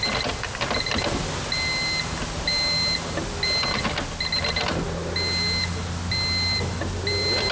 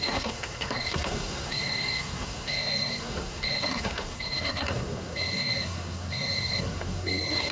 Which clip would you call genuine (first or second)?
first